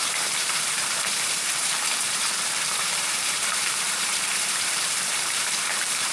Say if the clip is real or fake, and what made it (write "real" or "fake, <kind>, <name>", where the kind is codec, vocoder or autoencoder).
fake, vocoder, BigVGAN v2